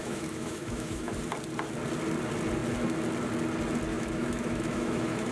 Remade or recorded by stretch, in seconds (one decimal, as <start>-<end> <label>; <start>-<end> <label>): 0.0-1.1 remade; 1.1-3.9 recorded; 3.9-5.3 remade

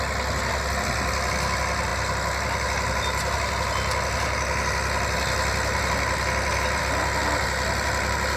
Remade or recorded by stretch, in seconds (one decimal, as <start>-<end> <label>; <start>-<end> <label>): 0.0-8.4 recorded

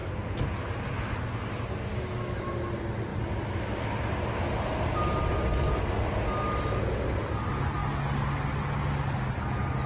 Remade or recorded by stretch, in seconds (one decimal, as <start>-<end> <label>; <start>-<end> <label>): 0.0-1.9 recorded; 1.9-2.5 remade; 2.5-9.9 recorded

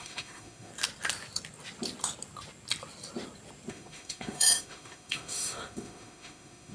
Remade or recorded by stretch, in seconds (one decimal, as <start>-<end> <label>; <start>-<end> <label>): 0.0-0.7 remade; 0.7-3.7 recorded; 3.7-6.7 remade

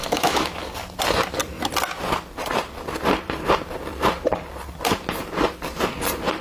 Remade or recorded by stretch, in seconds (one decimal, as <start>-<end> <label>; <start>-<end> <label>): 0.0-0.6 remade; 0.6-6.4 recorded

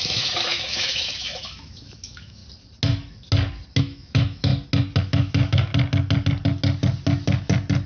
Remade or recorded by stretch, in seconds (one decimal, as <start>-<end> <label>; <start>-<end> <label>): 0.0-2.4 remade; 2.4-3.8 recorded; 3.8-4.5 remade; 4.5-5.0 recorded; 5.0-5.7 remade; 5.7-7.9 recorded